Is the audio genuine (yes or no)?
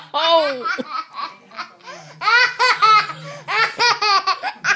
yes